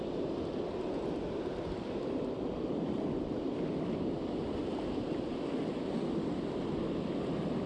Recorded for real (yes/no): yes